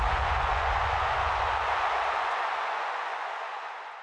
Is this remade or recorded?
remade